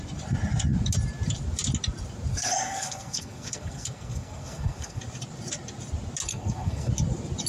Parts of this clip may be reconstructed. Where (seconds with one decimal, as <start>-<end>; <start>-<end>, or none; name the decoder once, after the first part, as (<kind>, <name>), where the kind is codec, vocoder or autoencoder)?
2.3-5.0 (codec, SNAC); 6.3-6.9